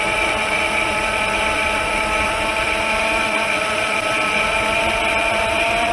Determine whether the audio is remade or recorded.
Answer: remade